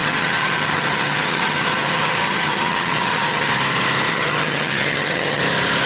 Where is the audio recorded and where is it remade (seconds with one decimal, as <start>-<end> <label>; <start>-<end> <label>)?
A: 0.0-3.5 remade; 3.5-4.1 recorded; 4.1-5.4 remade; 5.4-5.9 recorded